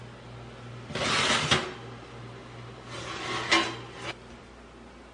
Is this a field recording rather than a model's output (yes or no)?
yes